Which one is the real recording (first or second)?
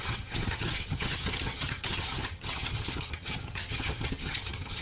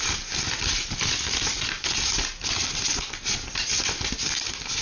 second